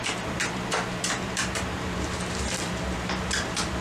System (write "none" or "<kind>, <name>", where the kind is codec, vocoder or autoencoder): vocoder, BigVGAN v2